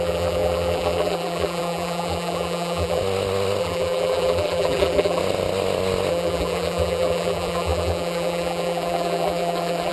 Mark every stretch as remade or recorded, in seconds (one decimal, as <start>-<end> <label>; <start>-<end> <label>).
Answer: 0.0-3.0 remade; 3.0-3.6 recorded; 3.6-5.2 remade; 5.2-6.1 recorded; 6.1-9.9 remade